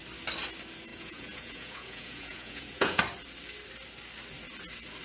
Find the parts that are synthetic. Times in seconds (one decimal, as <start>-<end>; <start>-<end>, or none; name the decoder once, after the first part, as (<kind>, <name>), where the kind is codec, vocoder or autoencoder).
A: 0.9-3.0 (vocoder, Vocos)